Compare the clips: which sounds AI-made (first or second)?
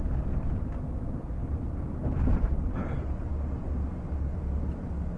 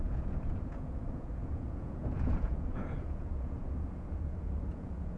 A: second